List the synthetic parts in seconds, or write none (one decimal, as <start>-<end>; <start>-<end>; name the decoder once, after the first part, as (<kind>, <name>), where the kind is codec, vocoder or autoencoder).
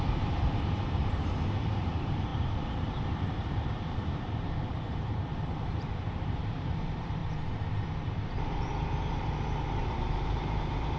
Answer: 0.0-1.0 (vocoder, BigVGAN v2); 1.6-7.2; 8.3-11.0